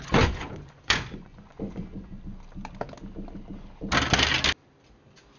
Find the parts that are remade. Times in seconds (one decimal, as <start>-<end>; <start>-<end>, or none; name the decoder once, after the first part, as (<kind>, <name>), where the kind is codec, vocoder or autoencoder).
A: 0.0-2.1 (vocoder, Vocos)